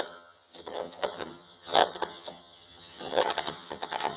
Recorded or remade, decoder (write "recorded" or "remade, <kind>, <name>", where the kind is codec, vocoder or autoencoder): remade, vocoder, HiFi-GAN